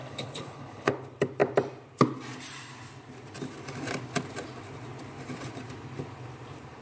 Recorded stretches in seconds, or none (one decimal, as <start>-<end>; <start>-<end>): 0.9-6.8